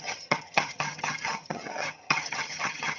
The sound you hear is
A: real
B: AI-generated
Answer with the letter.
B